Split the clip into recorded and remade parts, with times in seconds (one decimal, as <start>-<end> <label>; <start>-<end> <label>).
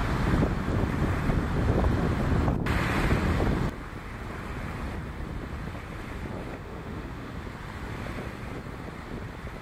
0.0-6.5 recorded; 6.5-7.3 remade; 7.3-9.6 recorded